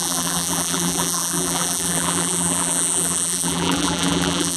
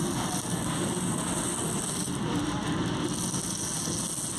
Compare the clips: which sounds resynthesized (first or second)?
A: first